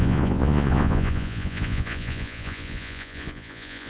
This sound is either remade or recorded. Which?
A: remade